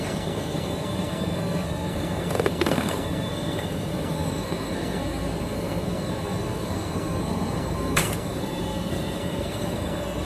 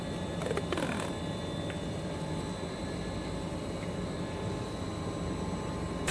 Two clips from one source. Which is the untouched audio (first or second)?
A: second